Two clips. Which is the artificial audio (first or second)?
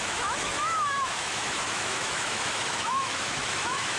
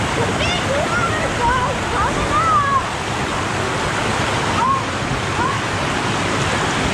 first